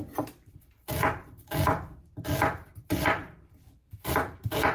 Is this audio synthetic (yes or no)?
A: no